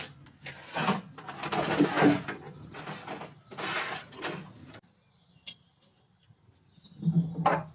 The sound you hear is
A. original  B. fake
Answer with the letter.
A